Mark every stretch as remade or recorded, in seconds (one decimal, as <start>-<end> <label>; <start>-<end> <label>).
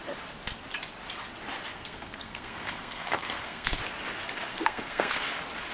0.0-1.7 recorded; 1.7-3.8 remade; 3.8-4.5 recorded; 4.5-5.2 remade; 5.2-5.7 recorded